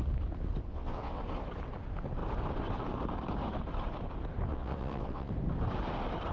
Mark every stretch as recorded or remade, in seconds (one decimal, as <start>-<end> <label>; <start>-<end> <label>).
0.0-0.7 recorded; 0.7-1.2 remade; 1.2-4.5 recorded; 4.5-5.3 remade; 5.3-6.3 recorded